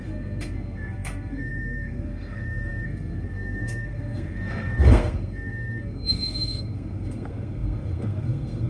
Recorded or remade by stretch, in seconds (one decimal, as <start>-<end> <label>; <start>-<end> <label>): 0.0-8.7 remade